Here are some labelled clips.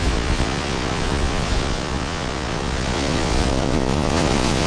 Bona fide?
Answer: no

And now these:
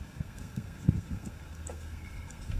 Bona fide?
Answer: no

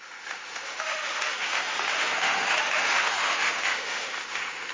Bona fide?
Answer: no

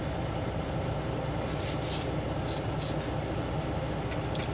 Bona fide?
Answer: yes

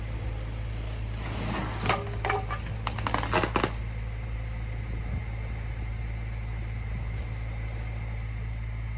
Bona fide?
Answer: yes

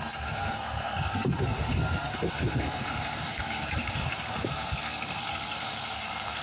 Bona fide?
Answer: no